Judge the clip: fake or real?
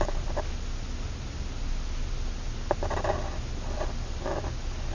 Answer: real